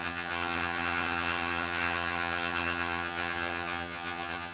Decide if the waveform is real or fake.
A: fake